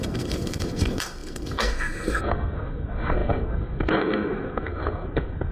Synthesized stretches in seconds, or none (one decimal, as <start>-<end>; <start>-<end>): 0.0-5.5